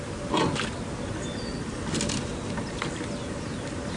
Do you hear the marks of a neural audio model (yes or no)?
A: no